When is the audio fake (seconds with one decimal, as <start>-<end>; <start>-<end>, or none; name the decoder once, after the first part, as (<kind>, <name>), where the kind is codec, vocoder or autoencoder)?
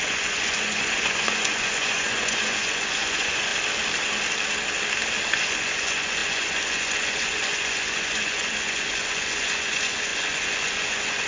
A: 0.0-3.5 (vocoder, Vocos); 5.3-11.3